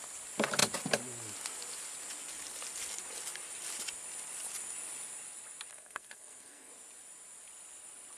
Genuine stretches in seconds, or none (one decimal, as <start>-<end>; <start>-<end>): 0.0-5.7; 6.7-8.2